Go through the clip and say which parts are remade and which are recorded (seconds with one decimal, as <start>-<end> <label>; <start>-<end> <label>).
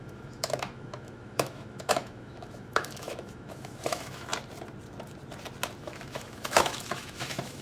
0.0-4.3 remade; 4.3-5.8 recorded; 5.8-7.6 remade